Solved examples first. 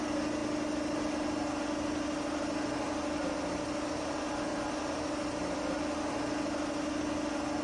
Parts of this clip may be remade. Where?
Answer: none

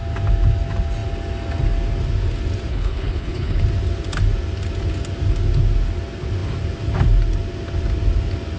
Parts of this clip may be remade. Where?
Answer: 2.7-3.6